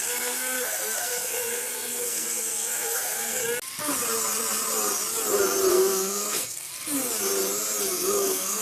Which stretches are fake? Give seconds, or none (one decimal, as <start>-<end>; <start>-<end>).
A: 0.0-3.4; 5.7-6.7; 7.9-8.6